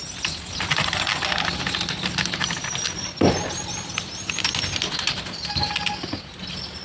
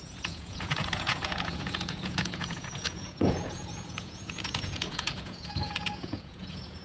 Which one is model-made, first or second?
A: second